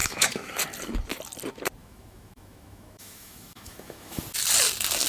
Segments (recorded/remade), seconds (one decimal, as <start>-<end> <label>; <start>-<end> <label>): 0.0-0.5 remade; 0.5-1.8 recorded; 1.8-4.2 remade; 4.2-5.1 recorded